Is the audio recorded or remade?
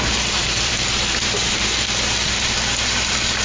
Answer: remade